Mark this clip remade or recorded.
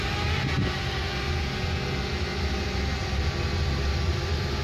recorded